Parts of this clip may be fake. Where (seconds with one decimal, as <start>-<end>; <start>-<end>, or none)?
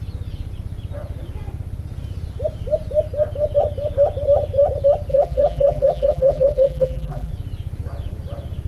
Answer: 5.1-7.3